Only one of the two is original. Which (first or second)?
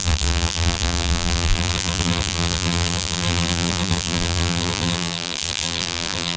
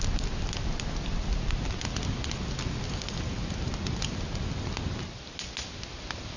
second